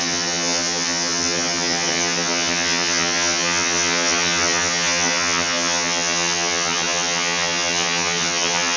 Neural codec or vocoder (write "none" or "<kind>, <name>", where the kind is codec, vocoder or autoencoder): vocoder, HiFi-GAN